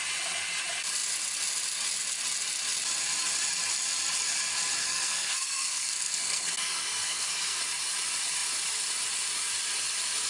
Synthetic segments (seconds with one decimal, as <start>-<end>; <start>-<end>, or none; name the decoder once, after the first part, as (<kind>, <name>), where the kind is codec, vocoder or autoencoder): 4.8-7.6 (codec, SNAC)